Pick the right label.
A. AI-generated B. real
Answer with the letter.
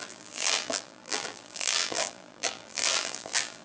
A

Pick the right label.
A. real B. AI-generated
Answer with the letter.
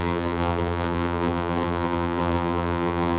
B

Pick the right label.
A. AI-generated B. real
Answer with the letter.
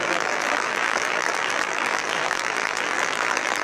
A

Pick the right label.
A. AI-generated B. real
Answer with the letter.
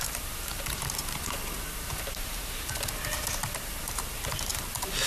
A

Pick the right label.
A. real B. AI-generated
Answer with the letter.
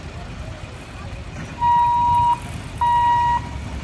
A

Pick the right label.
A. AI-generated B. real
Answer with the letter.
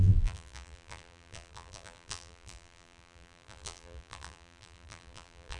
A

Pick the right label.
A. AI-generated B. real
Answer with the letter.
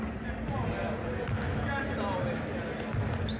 B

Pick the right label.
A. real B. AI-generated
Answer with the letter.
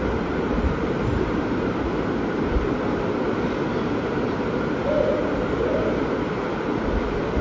B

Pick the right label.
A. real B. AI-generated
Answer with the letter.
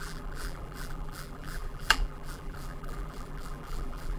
B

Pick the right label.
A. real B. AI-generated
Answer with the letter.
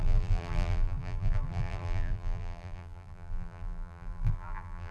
B